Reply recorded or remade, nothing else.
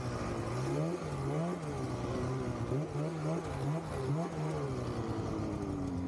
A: recorded